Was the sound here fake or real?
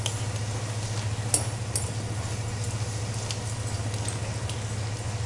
real